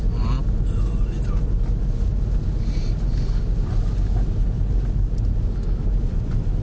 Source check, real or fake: real